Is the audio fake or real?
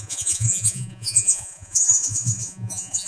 fake